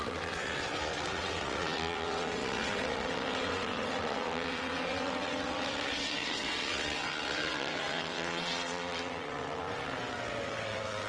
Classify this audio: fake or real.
fake